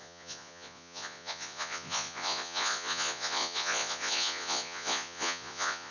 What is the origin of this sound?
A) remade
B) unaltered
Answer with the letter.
A